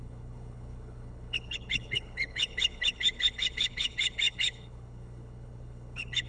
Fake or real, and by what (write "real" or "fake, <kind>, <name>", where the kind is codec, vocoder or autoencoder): fake, codec, HILCodec